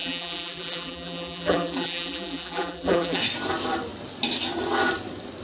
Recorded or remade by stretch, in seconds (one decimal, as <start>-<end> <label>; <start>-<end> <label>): 0.0-3.2 remade; 3.2-5.4 recorded